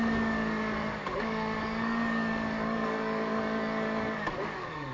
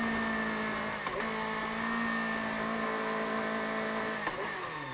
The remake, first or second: first